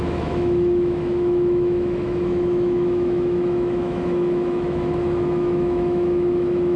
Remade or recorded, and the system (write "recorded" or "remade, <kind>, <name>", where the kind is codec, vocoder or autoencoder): remade, autoencoder, DAC-VAE